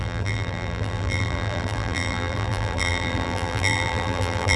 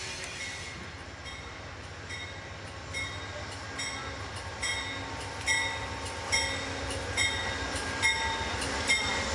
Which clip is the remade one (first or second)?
first